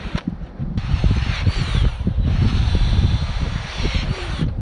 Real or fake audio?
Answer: fake